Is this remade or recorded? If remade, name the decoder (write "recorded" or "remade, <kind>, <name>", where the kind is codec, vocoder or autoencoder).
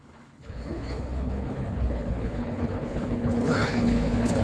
remade, codec, HILCodec